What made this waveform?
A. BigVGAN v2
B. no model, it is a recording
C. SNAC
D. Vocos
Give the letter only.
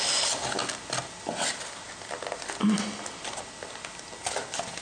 B